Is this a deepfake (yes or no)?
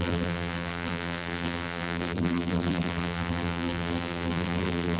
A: yes